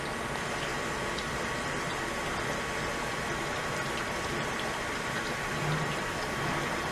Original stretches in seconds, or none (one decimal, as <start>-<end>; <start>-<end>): 0.7-3.0